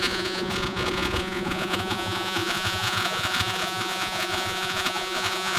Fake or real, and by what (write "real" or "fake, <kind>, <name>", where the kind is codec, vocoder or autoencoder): fake, vocoder, Vocos